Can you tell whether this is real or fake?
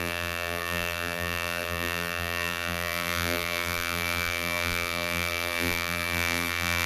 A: fake